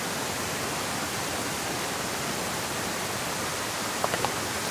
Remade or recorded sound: recorded